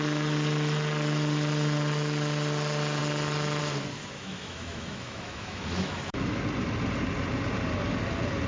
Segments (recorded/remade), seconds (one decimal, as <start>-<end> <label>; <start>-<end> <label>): 0.0-4.0 recorded; 4.0-6.4 remade; 6.4-8.5 recorded